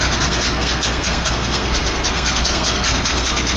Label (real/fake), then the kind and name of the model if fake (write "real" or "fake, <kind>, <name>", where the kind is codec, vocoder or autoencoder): fake, codec, SNAC